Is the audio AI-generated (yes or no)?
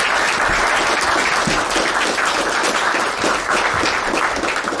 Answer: yes